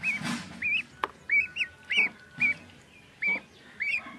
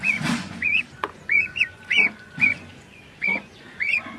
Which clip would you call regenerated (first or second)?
second